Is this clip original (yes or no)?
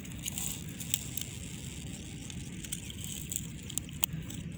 yes